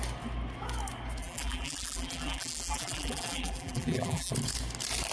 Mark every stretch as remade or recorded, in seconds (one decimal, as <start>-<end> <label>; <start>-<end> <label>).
0.0-1.2 recorded; 1.2-4.3 remade; 4.3-5.1 recorded